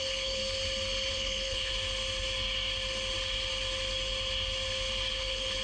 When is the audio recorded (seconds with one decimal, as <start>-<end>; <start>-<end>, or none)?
0.4-1.1; 1.7-5.1